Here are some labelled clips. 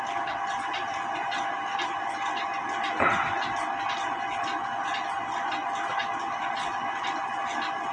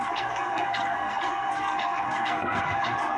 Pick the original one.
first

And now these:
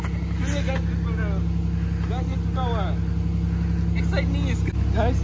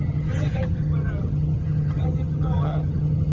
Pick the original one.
first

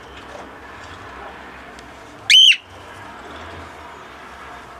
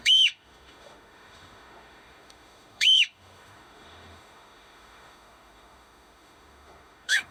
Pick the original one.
first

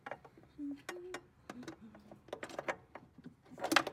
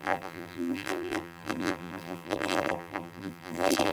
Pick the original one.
first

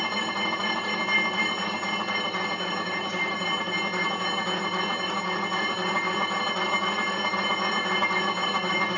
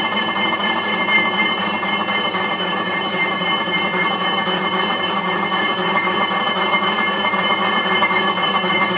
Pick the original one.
first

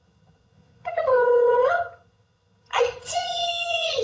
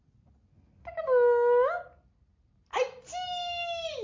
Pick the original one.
second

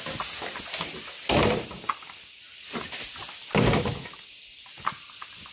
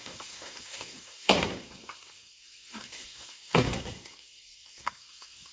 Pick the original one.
first